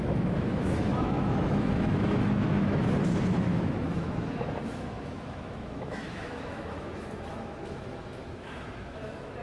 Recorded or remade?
remade